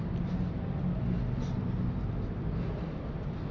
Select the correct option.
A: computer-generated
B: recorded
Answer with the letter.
B